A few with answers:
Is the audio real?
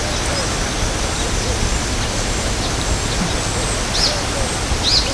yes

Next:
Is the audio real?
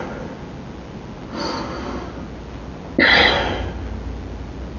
yes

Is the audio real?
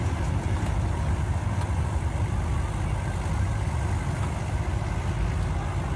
yes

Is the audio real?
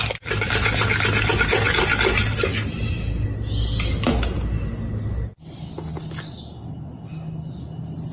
yes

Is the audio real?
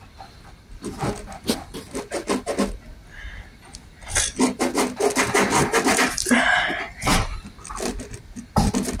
yes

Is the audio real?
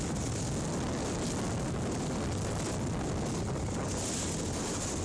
yes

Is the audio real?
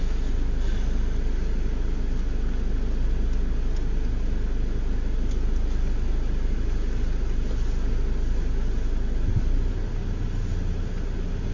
yes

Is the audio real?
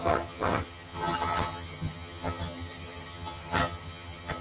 no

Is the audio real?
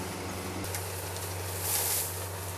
yes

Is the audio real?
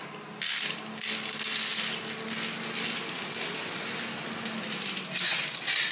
yes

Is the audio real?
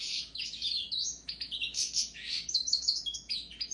no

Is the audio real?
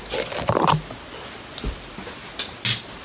yes